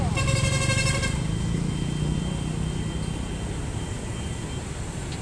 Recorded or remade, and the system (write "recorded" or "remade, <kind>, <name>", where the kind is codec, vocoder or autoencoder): recorded